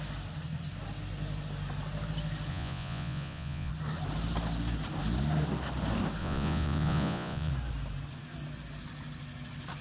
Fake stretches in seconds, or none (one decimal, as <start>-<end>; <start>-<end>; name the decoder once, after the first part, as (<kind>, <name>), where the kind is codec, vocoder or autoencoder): 2.5-3.7 (vocoder, Vocos); 6.2-7.5